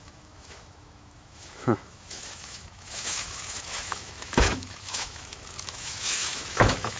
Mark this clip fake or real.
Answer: fake